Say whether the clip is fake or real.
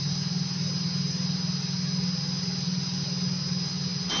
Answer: real